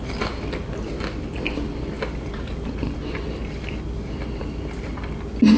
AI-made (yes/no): no